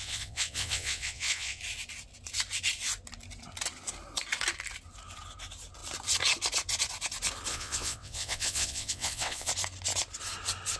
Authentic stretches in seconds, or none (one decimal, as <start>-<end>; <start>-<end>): 1.6-7.5; 9.5-10.8